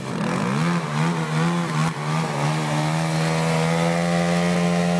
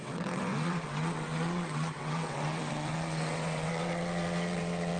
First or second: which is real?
first